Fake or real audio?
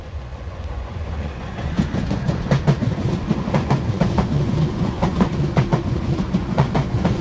fake